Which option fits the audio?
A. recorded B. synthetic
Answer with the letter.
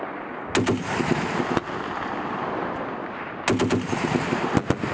A